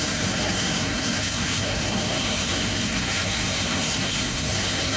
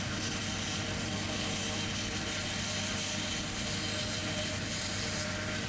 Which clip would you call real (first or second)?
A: second